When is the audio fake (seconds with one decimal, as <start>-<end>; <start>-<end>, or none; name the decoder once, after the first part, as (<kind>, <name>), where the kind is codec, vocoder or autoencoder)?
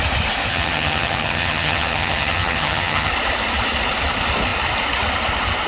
0.5-3.1 (vocoder, HiFi-GAN)